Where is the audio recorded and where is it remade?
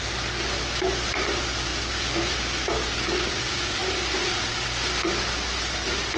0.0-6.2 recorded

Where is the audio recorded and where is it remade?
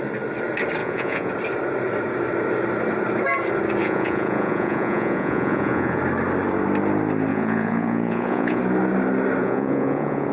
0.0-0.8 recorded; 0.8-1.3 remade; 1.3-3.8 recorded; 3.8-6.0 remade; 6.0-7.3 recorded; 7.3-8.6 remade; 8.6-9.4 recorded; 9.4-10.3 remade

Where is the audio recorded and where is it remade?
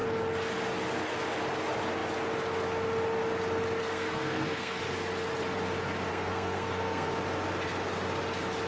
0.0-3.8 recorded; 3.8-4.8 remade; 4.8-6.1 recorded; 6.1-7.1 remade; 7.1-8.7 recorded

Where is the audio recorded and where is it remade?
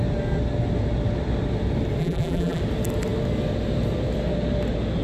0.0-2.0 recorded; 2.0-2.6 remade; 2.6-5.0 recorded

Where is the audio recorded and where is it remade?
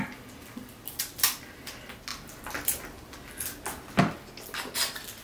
0.0-5.2 recorded